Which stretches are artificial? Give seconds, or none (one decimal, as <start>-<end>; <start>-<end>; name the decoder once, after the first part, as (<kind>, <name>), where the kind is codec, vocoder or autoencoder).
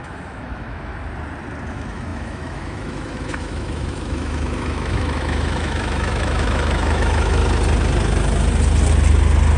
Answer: 0.0-0.9 (autoencoder, DAC-VAE); 1.7-7.4